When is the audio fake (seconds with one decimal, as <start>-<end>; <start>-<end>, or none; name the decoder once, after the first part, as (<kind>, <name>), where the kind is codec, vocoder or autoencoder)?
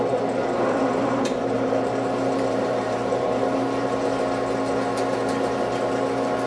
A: 0.4-4.2 (vocoder, BigVGAN v2)